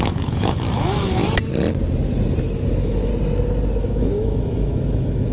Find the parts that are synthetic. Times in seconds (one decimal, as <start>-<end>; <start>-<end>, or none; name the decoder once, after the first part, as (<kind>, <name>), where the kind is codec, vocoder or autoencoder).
0.0-1.2 (autoencoder, DAC-VAE); 2.4-3.1; 3.8-5.3